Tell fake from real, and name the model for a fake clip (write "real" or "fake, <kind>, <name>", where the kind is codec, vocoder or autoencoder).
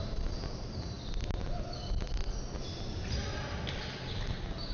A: real